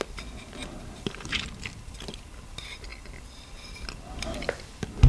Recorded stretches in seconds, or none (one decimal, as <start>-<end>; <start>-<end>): 0.0-0.6; 1.4-5.1